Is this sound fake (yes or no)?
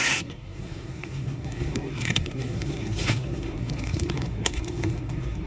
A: yes